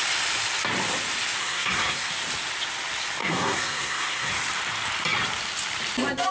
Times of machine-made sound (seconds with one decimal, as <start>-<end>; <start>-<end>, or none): 1.4-2.1; 3.2-4.3